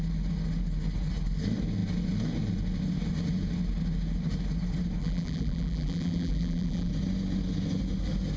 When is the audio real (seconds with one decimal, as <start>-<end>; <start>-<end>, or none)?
0.0-5.0; 6.9-8.4